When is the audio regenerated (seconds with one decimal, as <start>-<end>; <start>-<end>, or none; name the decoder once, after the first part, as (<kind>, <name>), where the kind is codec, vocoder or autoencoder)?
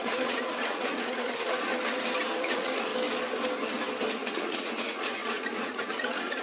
0.0-1.7 (vocoder, Vocos); 2.4-2.9; 4.1-6.4